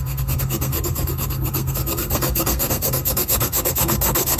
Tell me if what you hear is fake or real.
fake